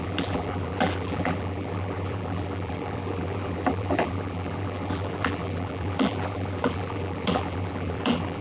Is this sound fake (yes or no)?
yes